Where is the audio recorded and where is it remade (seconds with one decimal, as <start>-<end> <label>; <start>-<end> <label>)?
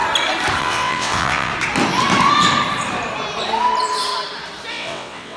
0.0-0.6 recorded; 0.6-1.5 remade; 1.5-4.7 recorded; 4.7-5.4 remade